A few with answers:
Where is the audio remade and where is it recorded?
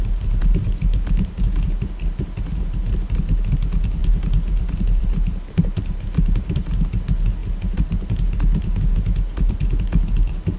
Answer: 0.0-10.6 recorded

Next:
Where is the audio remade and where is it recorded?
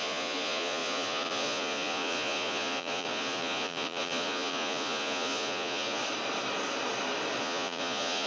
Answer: 0.0-6.0 remade; 6.0-7.4 recorded; 7.4-8.3 remade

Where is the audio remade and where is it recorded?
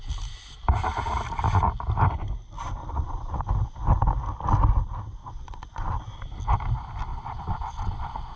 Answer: 0.0-2.8 recorded; 2.8-3.4 remade; 3.4-5.2 recorded; 5.2-5.9 remade; 5.9-7.1 recorded; 7.1-8.4 remade